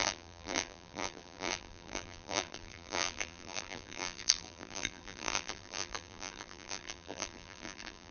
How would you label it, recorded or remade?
remade